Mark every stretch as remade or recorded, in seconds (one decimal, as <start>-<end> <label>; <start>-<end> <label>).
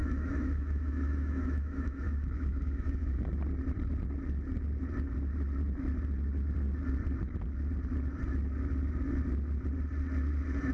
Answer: 0.0-3.2 remade; 3.2-10.7 recorded